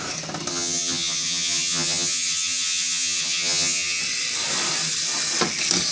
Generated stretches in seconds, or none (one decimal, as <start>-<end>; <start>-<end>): 0.5-4.0

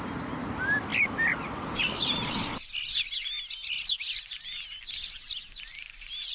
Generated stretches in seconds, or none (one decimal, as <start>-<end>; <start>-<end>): none

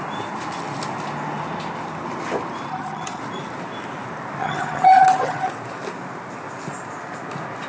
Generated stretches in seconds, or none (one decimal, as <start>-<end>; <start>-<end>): 2.7-3.2; 4.4-5.5

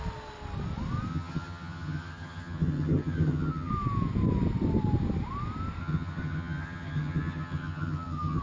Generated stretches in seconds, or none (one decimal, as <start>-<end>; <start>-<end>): 1.1-3.7; 5.8-8.4

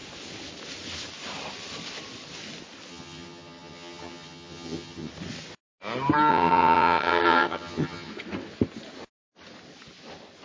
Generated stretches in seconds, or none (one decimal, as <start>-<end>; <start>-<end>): 2.9-5.1; 6.3-8.1